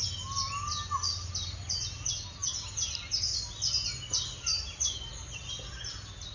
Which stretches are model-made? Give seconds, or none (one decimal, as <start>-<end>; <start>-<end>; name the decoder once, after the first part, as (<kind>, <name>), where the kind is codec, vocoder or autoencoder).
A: none